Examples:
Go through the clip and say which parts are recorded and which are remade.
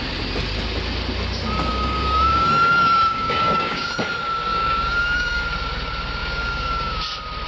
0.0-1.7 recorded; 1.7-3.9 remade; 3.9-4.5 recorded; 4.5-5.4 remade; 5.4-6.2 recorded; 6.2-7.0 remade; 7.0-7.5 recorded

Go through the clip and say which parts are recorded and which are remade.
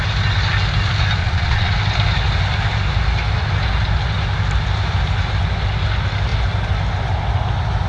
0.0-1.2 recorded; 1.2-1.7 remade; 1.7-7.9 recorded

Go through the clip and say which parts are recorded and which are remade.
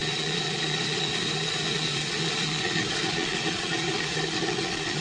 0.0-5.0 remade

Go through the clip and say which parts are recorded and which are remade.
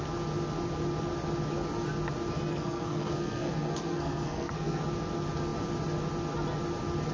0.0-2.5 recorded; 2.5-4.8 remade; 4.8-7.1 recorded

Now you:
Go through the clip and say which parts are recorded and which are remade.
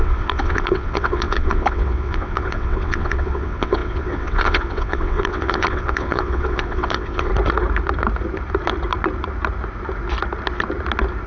0.0-7.3 remade; 7.3-11.3 recorded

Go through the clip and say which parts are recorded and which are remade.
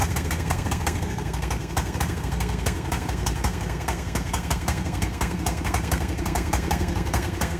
0.0-7.6 remade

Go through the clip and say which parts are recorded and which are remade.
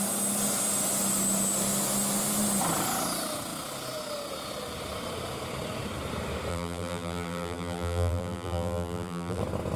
0.0-6.5 recorded; 6.5-9.4 remade; 9.4-9.8 recorded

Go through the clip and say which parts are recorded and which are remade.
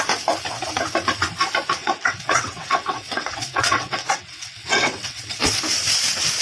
0.0-1.8 recorded; 1.8-5.6 remade; 5.6-6.4 recorded